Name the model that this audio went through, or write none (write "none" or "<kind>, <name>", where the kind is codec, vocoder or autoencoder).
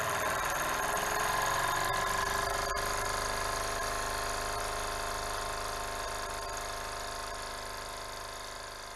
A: none